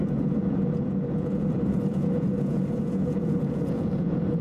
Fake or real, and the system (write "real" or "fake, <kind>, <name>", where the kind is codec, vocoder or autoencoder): fake, vocoder, Vocos